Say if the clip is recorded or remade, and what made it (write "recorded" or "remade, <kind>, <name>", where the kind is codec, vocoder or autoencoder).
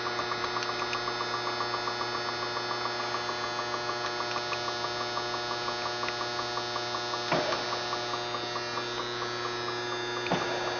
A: recorded